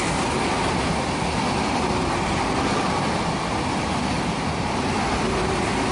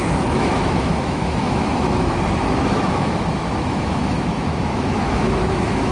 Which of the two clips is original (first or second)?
first